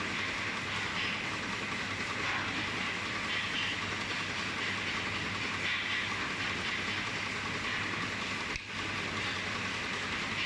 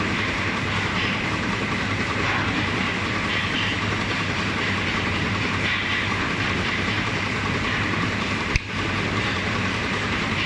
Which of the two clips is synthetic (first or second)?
second